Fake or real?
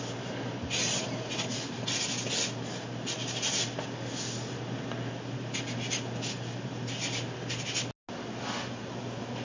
real